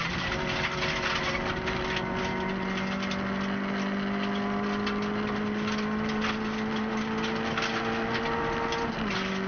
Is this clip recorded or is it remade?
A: recorded